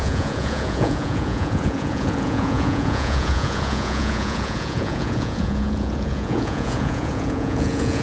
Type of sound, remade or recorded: remade